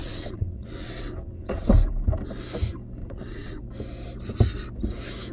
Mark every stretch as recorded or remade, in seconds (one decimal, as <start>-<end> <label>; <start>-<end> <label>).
0.0-1.7 remade; 1.7-3.0 recorded; 3.0-3.6 remade; 3.6-5.3 recorded